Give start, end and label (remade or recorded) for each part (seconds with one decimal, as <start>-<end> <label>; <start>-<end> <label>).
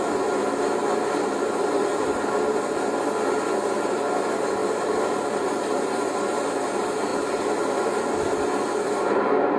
0.0-4.6 recorded; 4.6-6.1 remade; 6.1-7.1 recorded; 7.1-8.0 remade; 8.0-9.6 recorded